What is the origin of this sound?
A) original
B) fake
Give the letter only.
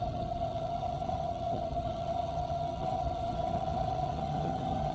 B